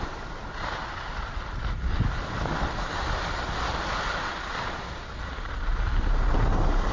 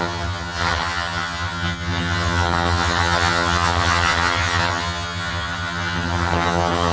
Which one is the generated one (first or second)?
second